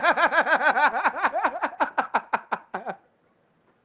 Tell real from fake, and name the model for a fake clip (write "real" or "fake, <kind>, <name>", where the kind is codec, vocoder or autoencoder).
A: real